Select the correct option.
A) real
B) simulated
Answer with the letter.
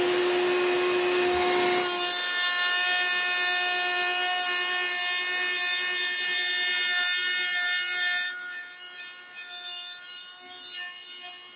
A